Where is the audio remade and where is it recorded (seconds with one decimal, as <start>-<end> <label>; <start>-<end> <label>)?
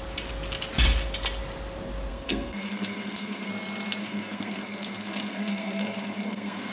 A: 0.0-2.1 recorded; 2.1-3.5 remade; 3.5-4.0 recorded; 4.0-6.7 remade